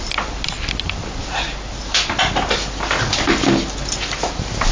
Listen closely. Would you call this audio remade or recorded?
recorded